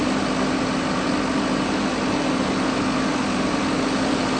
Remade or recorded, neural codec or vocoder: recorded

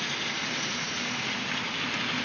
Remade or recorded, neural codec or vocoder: recorded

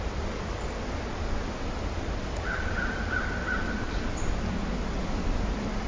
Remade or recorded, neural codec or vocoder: recorded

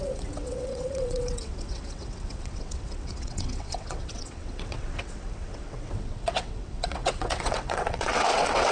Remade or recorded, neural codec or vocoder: remade, vocoder, WaveNeXt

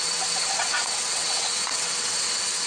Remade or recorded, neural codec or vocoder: remade, vocoder, WaveNeXt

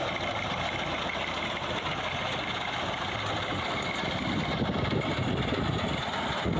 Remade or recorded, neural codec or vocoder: recorded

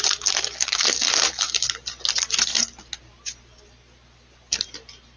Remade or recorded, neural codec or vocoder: recorded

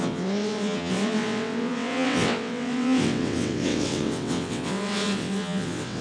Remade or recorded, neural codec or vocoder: remade, vocoder, WaveNeXt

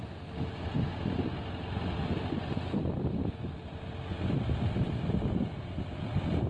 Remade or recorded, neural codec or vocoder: recorded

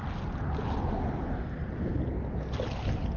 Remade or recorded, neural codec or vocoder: recorded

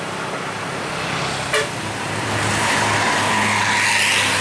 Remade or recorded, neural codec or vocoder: recorded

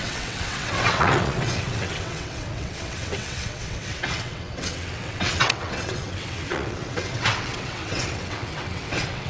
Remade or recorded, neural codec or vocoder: remade, vocoder, WaveNeXt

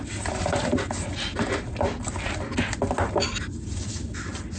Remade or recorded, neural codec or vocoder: recorded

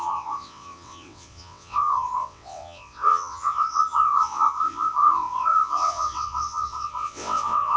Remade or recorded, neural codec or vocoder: remade, vocoder, WaveNeXt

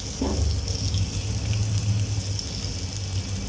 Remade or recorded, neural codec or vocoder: recorded